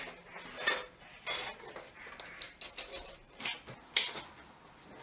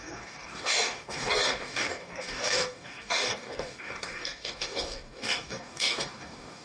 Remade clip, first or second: second